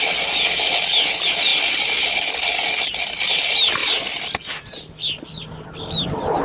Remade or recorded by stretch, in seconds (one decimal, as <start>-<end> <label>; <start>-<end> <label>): 0.0-6.4 recorded